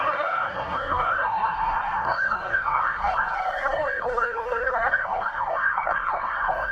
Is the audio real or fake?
fake